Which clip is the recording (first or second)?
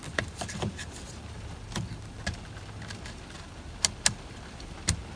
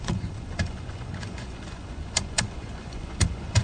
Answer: first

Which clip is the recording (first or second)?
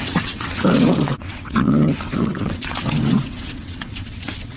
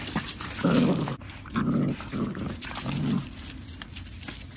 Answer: second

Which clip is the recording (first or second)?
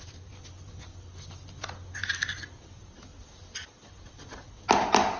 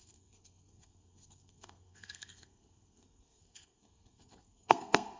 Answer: first